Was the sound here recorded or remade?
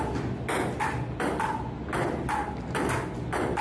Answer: recorded